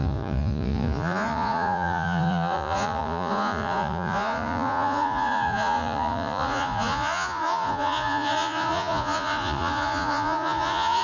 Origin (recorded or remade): remade